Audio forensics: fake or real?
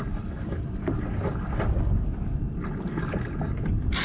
real